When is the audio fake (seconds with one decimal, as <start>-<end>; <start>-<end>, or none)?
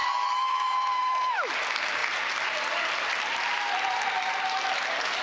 0.0-1.5